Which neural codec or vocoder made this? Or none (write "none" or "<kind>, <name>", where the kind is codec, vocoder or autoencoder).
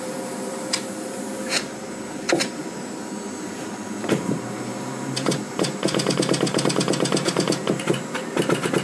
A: vocoder, BigVGAN v2